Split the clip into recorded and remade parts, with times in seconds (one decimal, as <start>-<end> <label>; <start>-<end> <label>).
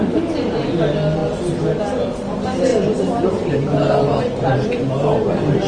0.0-5.7 recorded